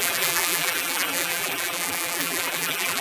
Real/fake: fake